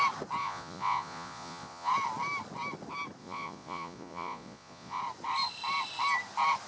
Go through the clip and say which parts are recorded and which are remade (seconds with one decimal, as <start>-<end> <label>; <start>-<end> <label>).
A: 0.0-0.4 recorded; 0.4-1.9 remade; 1.9-3.2 recorded; 3.2-5.0 remade; 5.0-6.7 recorded